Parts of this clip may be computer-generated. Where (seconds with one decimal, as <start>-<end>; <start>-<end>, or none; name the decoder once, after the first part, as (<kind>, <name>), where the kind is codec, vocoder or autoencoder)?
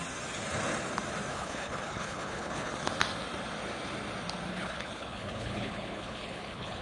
1.3-2.7 (codec, HILCodec); 4.5-6.8